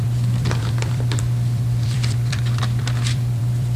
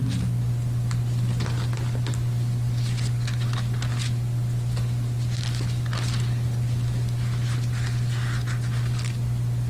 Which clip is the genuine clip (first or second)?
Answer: second